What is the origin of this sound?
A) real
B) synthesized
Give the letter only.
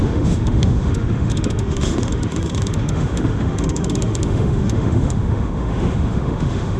B